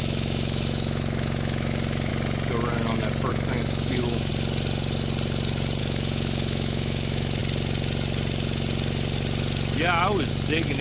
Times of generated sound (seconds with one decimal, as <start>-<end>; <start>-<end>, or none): 0.0-2.1; 3.3-4.3; 5.8-7.4; 10.3-10.8